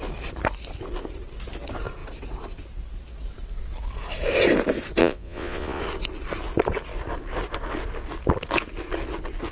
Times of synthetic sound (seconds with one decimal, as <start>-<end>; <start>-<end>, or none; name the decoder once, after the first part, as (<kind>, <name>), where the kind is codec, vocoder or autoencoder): 5.0-5.8 (vocoder, Vocos)